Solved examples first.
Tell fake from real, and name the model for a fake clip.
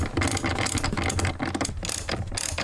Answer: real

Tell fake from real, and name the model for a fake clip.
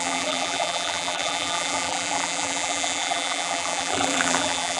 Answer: fake, vocoder, BigVGAN v2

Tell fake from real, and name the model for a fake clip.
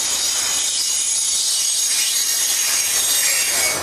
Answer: real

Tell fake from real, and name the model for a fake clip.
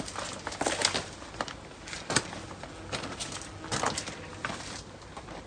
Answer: real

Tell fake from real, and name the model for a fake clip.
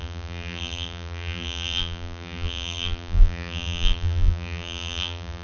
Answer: fake, vocoder, BigVGAN v2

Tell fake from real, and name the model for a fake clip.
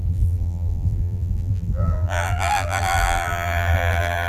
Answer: fake, vocoder, BigVGAN v2